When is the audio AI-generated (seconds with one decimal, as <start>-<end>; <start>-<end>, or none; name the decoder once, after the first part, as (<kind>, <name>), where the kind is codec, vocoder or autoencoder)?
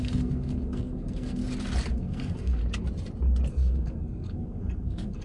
0.0-1.4 (codec, SNAC); 1.9-2.6; 3.5-5.2